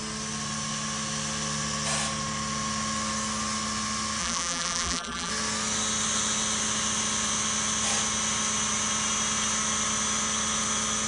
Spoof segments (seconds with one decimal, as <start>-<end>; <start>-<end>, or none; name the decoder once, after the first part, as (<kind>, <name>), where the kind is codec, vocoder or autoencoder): 4.2-5.3 (vocoder, BigVGAN v2)